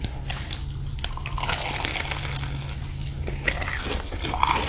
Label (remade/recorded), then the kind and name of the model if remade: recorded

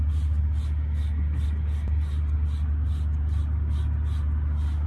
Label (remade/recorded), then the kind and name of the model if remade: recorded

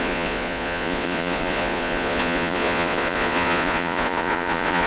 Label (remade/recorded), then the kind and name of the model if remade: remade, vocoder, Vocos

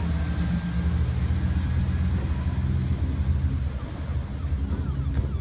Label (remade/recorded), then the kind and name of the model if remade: recorded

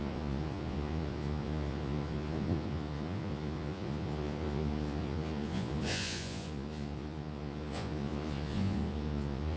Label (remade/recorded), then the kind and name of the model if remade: remade, vocoder, Vocos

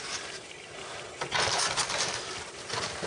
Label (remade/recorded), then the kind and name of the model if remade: recorded